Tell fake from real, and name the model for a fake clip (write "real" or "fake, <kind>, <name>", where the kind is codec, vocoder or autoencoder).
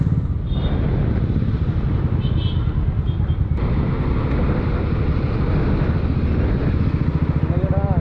real